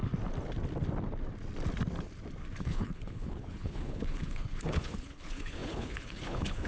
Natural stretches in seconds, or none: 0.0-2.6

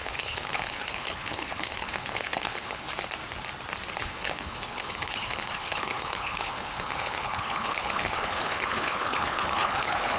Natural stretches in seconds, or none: 2.9-4.0

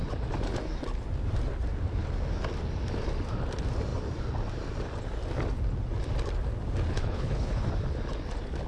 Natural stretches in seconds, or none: 0.0-6.9; 7.7-8.7

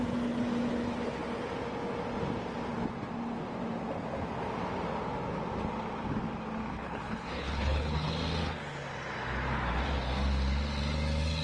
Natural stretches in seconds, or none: 0.0-6.7; 8.1-11.4

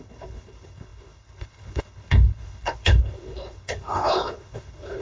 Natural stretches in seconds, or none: none

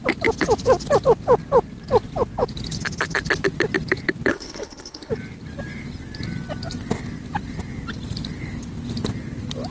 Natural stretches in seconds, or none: 0.0-4.3; 5.1-9.7

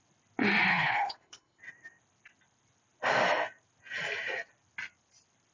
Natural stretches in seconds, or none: 0.0-0.7; 1.6-5.5

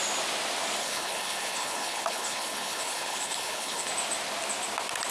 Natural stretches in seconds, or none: 0.0-0.8; 3.9-5.1